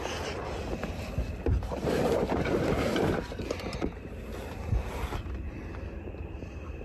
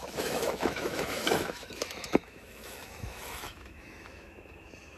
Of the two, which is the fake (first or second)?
second